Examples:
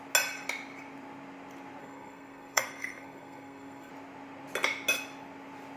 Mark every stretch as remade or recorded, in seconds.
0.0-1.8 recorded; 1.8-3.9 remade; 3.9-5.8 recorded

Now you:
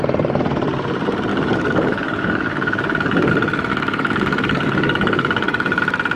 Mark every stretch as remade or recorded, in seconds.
0.0-1.3 recorded; 1.3-3.3 remade; 3.3-3.7 recorded; 3.7-5.8 remade; 5.8-6.2 recorded